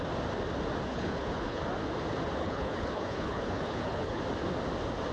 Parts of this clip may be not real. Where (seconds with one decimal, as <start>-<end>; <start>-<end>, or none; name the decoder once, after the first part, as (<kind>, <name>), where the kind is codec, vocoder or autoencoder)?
0.9-1.6 (codec, HILCodec); 2.4-4.2